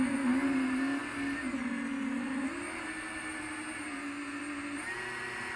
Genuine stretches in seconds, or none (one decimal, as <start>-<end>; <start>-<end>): 0.0-5.6